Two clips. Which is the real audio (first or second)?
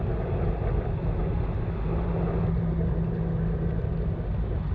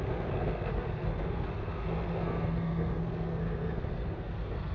first